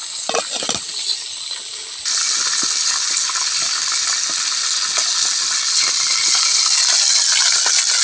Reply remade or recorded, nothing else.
recorded